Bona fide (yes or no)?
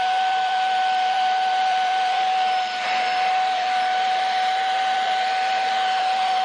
no